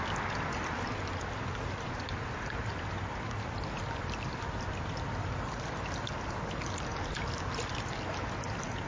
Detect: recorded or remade recorded